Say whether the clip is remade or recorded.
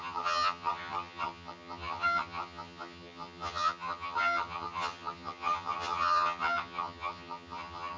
remade